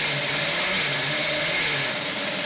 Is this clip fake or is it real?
real